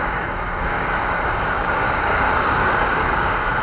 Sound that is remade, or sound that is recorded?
remade